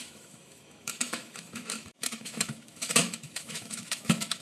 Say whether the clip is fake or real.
fake